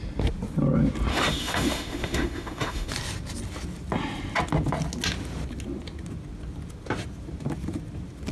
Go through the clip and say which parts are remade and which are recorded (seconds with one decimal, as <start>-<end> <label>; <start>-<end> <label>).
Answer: 0.0-1.1 recorded; 1.1-2.9 remade; 2.9-8.3 recorded